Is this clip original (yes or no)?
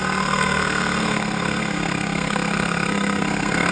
no